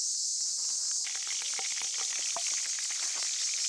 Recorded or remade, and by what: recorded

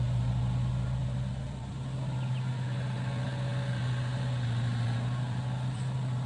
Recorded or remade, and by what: recorded